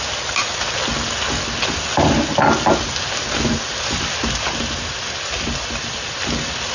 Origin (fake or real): real